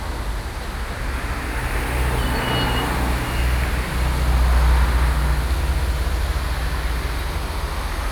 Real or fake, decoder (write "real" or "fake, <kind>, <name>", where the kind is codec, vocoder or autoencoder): real